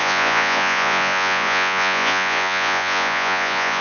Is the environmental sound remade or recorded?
remade